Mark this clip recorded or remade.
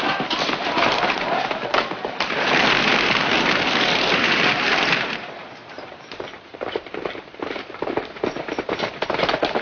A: remade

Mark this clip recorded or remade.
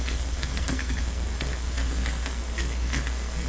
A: remade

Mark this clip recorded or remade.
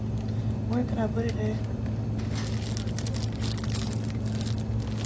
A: recorded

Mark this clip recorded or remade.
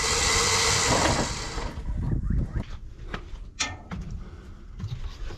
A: recorded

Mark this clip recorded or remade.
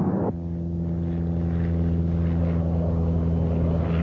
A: recorded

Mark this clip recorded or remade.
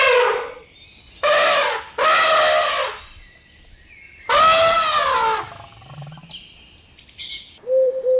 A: recorded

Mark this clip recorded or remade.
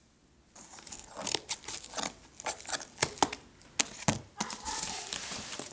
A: recorded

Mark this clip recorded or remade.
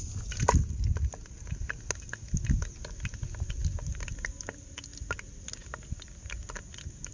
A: recorded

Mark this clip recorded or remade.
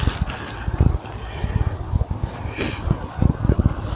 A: recorded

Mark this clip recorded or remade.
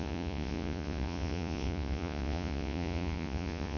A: remade